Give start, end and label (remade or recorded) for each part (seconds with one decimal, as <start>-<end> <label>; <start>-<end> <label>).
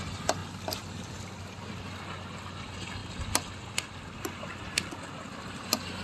0.0-6.0 recorded